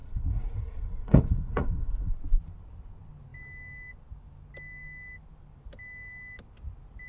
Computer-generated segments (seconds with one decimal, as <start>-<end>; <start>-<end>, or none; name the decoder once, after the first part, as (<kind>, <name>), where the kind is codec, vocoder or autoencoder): 0.0-2.1 (vocoder, Vocos)